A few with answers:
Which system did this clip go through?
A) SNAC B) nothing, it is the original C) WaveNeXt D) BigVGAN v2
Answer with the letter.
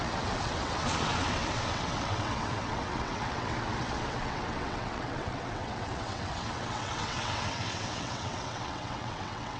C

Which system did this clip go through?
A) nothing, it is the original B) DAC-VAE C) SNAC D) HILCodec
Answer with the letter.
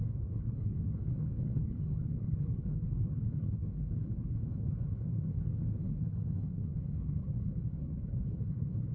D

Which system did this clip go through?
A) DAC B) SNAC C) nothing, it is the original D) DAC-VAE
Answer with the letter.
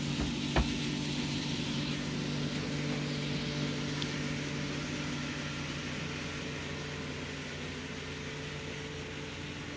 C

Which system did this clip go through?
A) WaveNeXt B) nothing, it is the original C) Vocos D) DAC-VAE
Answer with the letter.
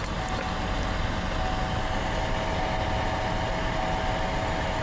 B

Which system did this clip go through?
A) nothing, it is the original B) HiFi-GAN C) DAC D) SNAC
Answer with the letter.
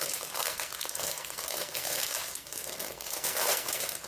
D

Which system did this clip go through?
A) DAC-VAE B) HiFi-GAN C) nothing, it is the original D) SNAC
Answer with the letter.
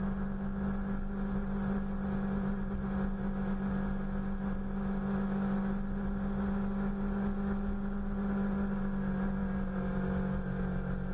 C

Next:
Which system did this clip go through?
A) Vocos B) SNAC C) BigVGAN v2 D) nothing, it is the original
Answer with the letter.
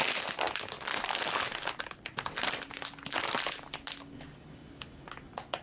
D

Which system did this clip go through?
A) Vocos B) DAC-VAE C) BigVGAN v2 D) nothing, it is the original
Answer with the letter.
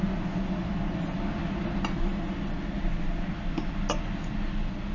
D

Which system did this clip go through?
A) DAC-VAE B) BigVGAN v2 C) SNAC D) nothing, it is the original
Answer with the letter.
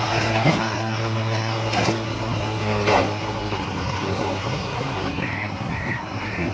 C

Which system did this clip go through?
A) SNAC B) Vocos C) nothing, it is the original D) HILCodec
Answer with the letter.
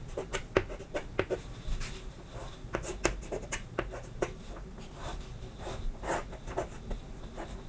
C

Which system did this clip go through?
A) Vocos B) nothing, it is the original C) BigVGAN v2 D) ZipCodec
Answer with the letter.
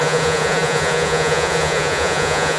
A